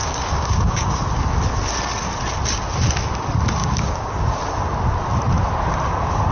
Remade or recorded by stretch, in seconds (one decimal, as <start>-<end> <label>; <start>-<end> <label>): 0.0-1.0 remade; 1.0-3.6 recorded; 3.6-4.4 remade; 4.4-6.3 recorded